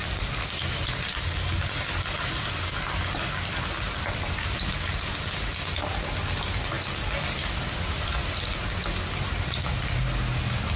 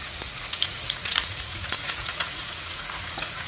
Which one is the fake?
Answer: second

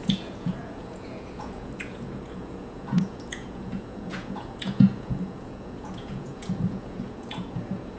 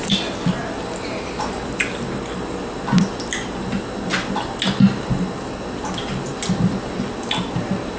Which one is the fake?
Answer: first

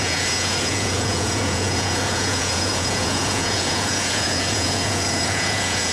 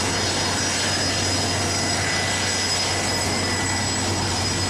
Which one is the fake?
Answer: first